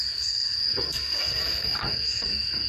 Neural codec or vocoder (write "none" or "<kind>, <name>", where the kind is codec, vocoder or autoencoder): codec, SNAC